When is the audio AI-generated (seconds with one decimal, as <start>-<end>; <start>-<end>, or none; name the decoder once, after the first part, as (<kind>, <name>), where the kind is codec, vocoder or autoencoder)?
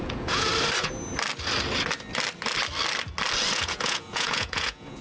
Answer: 0.0-0.5 (vocoder, Vocos); 3.5-5.0